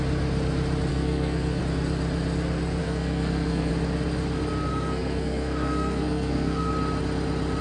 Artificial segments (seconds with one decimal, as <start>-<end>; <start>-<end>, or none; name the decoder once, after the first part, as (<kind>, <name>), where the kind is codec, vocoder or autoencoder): 0.9-1.6 (codec, SNAC); 2.8-3.7; 4.7-6.7